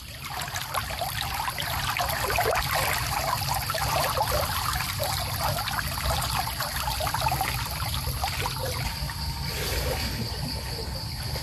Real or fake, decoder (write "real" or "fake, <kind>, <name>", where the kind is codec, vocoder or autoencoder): real